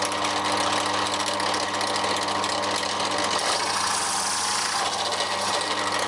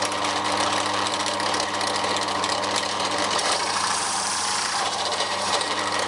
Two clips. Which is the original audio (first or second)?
first